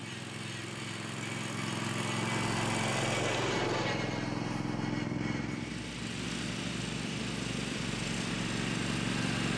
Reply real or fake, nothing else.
real